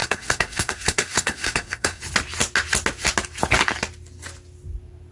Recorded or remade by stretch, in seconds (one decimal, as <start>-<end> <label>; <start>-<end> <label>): 0.0-2.0 remade; 2.0-5.1 recorded